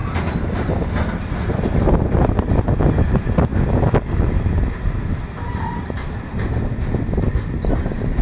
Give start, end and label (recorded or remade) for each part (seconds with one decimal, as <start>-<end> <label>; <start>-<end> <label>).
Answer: 0.0-8.2 recorded